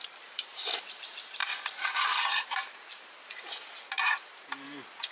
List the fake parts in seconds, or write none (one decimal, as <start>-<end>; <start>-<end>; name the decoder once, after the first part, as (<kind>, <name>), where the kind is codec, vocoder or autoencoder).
0.0-5.1 (vocoder, BigVGAN v2)